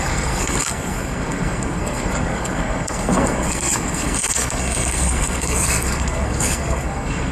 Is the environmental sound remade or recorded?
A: remade